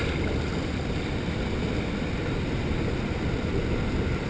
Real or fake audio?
real